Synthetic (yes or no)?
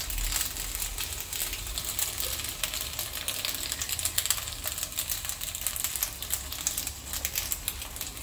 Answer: no